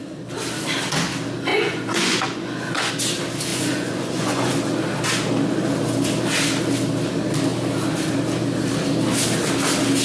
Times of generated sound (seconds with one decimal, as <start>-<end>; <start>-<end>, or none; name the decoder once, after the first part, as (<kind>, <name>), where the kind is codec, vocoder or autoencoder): 1.5-2.9 (vocoder, Vocos); 3.5-4.5